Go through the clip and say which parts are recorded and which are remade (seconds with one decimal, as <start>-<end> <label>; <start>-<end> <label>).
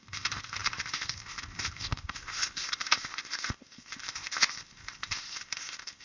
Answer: 0.0-6.0 remade